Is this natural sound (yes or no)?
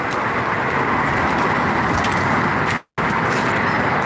yes